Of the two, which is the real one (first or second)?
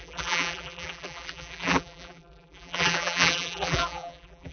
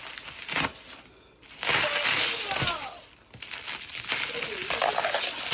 second